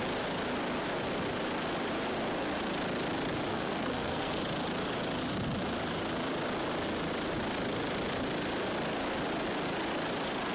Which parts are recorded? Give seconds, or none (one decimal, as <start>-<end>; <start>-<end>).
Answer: 0.0-3.5; 4.4-10.5